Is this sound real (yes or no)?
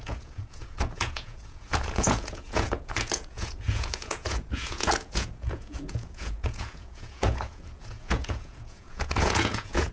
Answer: no